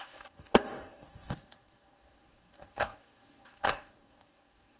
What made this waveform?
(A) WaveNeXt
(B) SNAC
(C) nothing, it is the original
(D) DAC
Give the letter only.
D